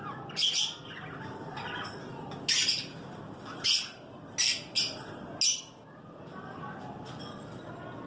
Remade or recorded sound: recorded